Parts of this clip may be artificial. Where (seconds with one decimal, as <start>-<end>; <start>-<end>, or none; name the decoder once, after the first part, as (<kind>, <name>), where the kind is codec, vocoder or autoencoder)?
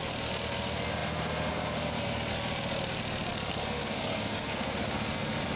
3.3-4.8 (codec, SNAC)